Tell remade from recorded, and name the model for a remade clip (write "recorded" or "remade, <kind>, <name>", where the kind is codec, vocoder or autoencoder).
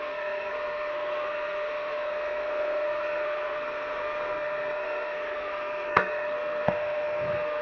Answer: remade, codec, SNAC